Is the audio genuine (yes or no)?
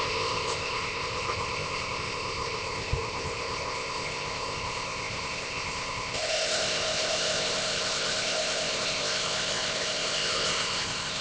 no